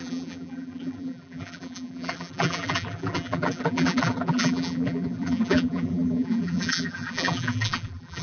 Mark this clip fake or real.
fake